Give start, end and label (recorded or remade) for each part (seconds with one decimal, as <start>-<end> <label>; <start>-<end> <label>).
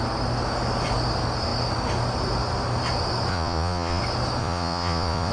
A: 0.0-3.3 recorded; 3.3-4.0 remade; 4.0-4.4 recorded; 4.4-5.3 remade